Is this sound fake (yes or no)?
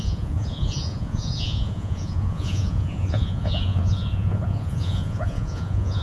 yes